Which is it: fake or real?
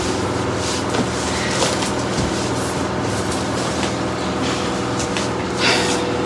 real